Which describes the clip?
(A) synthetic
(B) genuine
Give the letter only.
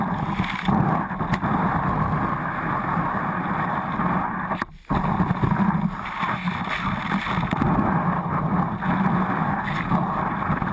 B